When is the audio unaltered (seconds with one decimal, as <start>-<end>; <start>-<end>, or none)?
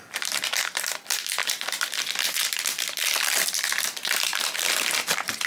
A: 0.0-1.4; 4.7-5.5